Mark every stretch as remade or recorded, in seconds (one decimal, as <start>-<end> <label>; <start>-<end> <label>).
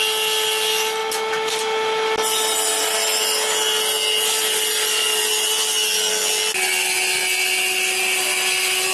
0.0-8.9 recorded